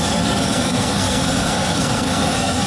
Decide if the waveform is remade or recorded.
remade